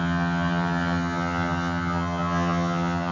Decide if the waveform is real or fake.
fake